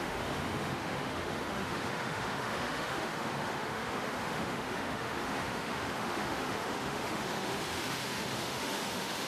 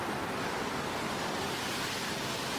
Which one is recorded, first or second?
second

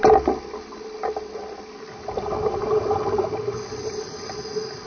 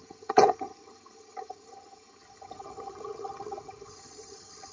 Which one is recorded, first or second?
first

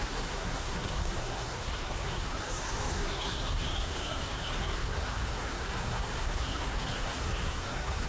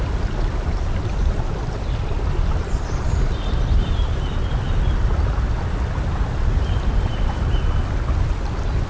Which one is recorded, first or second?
second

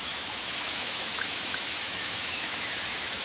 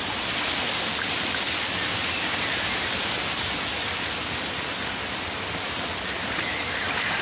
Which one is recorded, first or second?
second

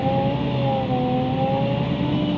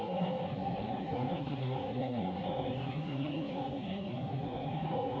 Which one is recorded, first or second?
first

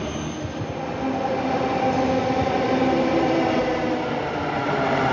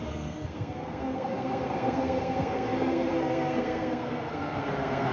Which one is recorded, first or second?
first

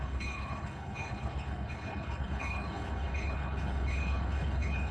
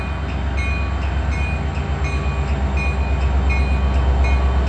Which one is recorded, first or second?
second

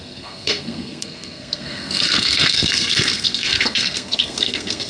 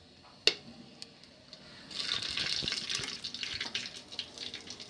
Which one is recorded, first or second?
second